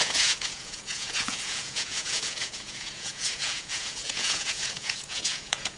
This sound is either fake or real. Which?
fake